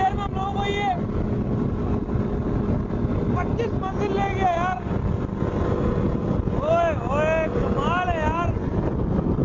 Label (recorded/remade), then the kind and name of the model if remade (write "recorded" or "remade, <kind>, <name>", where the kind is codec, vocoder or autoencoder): recorded